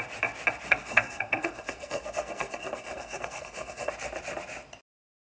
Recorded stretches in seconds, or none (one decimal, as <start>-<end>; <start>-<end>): 0.0-0.7; 3.9-5.3